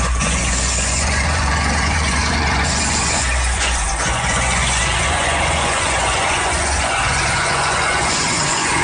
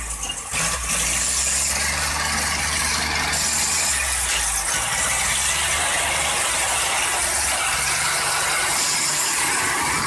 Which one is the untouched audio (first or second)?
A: second